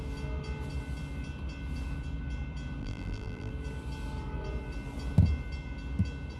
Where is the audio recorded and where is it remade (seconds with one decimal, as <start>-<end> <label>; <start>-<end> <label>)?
0.0-2.8 recorded; 2.8-3.5 remade; 3.5-6.4 recorded